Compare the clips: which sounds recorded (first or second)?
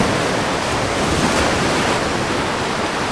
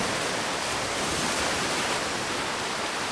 first